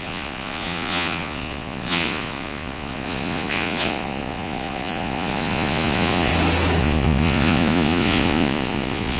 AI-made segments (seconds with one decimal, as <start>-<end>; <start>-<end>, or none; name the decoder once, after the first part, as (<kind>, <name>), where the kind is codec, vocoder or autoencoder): 0.0-6.3 (vocoder, Vocos); 6.8-9.2